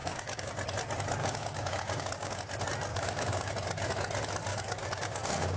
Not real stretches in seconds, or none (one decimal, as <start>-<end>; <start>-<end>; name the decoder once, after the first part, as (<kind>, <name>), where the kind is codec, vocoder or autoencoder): 0.0-0.5 (codec, DAC); 1.2-2.4; 2.9-3.5; 4.5-5.6